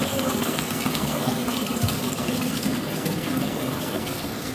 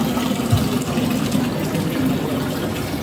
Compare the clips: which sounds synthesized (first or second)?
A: first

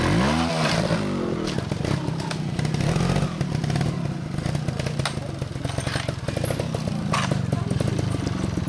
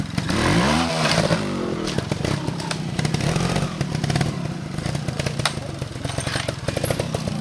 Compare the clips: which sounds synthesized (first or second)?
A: second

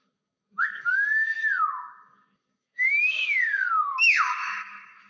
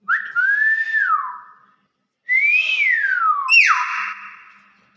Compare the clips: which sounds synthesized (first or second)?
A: first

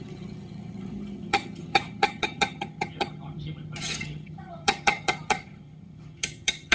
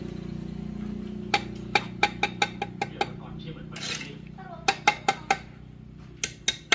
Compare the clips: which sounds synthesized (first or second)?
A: first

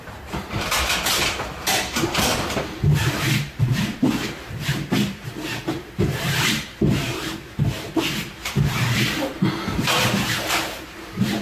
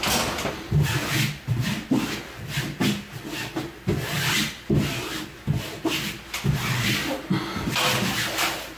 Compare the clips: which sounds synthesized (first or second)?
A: first